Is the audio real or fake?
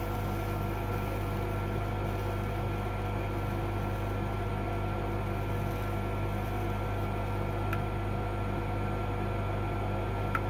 real